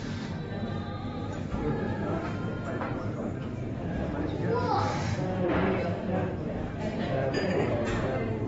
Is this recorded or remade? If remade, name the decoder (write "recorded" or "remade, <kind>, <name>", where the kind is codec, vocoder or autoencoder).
remade, vocoder, BigVGAN v2